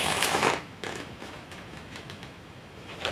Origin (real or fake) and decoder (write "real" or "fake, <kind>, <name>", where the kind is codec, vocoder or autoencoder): fake, autoencoder, DAC-VAE